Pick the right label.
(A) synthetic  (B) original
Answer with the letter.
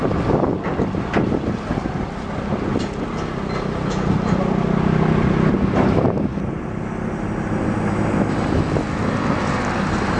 B